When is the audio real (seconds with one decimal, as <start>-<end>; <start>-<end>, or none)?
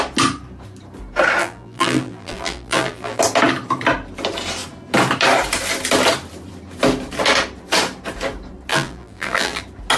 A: 0.0-1.4; 3.2-8.7; 9.6-10.0